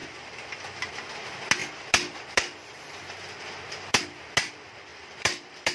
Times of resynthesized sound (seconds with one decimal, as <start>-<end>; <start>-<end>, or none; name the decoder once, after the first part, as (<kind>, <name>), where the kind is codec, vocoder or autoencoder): 0.0-0.9 (vocoder, BigVGAN v2); 1.6-4.0; 4.9-5.7